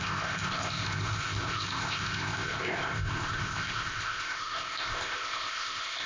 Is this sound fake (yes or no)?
yes